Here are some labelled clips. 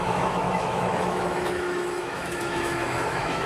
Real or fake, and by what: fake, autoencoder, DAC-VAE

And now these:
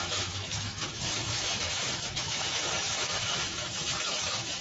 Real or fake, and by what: fake, autoencoder, DAC-VAE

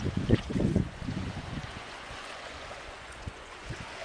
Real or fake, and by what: fake, vocoder, Vocos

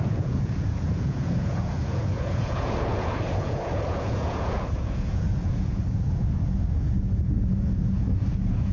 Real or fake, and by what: fake, vocoder, Vocos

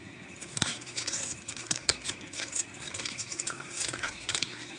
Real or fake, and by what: fake, codec, SNAC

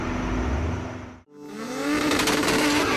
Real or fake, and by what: real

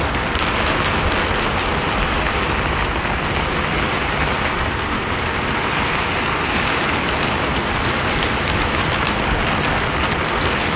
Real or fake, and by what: real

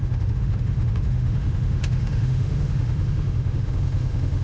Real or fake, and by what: fake, autoencoder, DAC-VAE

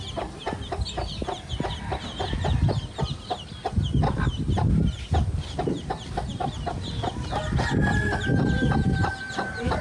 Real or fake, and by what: real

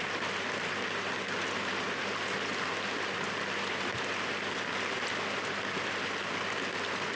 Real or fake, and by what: real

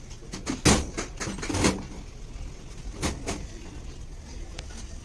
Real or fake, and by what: real